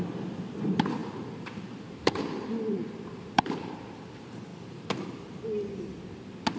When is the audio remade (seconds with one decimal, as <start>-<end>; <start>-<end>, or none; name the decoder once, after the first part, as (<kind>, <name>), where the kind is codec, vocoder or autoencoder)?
1.0-2.2 (vocoder, BigVGAN v2); 2.8-4.0; 4.5-5.4